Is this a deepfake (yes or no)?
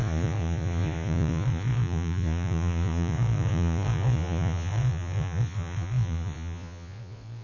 yes